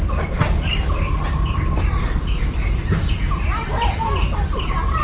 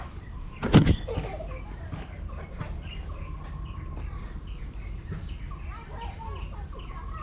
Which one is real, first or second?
second